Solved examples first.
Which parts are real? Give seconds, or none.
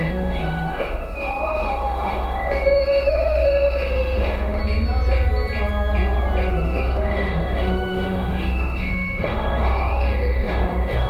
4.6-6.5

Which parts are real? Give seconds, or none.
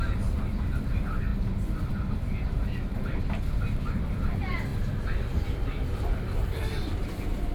0.0-7.5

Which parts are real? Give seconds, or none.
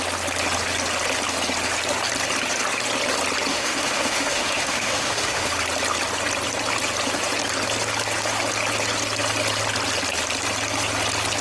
0.0-3.5; 5.5-11.4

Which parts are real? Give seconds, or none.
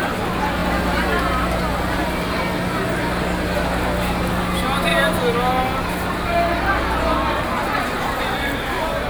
0.0-9.1